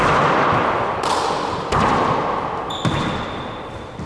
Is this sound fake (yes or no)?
no